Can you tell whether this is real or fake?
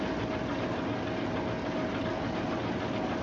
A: real